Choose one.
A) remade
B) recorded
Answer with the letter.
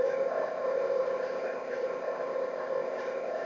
A